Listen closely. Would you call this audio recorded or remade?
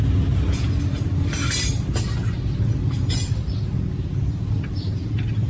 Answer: recorded